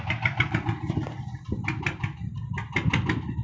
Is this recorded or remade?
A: recorded